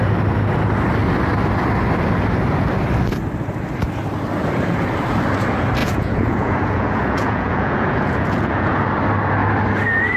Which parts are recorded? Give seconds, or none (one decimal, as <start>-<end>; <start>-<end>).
0.0-5.8; 8.9-10.2